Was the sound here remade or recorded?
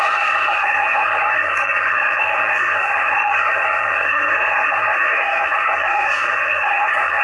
remade